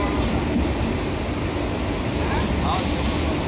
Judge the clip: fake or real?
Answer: real